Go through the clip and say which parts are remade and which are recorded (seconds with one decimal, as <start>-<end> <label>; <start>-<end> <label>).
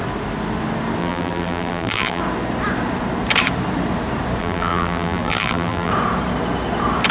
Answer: 0.0-1.0 recorded; 1.0-2.2 remade; 2.2-4.4 recorded; 4.4-5.9 remade; 5.9-7.1 recorded